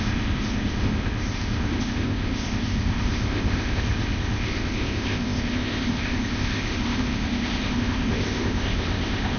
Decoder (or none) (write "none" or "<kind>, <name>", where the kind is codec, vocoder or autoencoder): codec, ZipCodec